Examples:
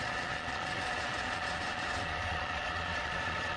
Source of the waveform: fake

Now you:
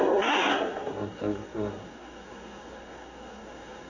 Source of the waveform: fake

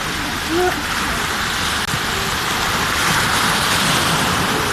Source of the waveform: real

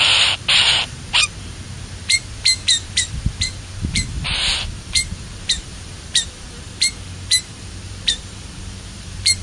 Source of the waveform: fake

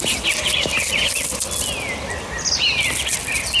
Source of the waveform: real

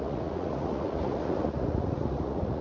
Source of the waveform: fake